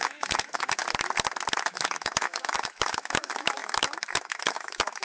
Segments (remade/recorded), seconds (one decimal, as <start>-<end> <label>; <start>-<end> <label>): 0.0-0.8 remade; 0.8-1.6 recorded; 1.6-5.0 remade